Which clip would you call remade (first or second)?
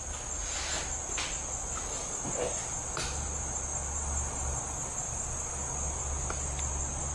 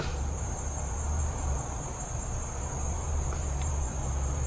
second